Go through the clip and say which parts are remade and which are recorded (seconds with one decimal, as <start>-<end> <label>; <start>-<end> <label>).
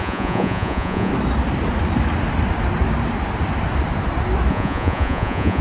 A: 0.0-1.1 remade; 1.1-4.5 recorded; 4.5-5.6 remade